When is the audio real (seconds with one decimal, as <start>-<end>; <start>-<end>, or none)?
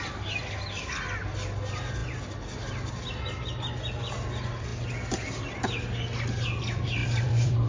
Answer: 0.0-7.0